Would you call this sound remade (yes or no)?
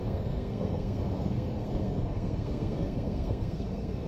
yes